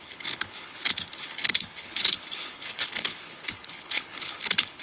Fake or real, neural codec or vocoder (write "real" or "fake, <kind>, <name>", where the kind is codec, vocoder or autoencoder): fake, codec, HILCodec